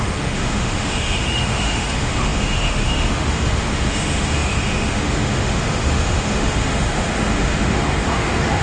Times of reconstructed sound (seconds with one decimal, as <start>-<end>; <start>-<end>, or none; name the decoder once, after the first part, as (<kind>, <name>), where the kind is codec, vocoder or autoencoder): 0.0-8.6 (autoencoder, DAC-VAE)